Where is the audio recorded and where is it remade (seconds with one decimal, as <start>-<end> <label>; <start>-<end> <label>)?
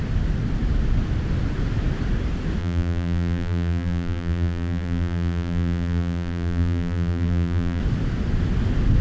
0.0-2.6 recorded; 2.6-7.8 remade; 7.8-9.0 recorded